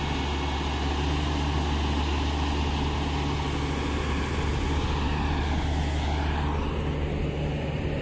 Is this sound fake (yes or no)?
no